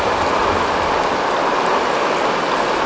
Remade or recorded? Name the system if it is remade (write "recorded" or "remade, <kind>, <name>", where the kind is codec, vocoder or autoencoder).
recorded